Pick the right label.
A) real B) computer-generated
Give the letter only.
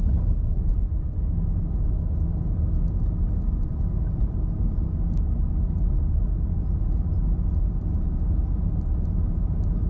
A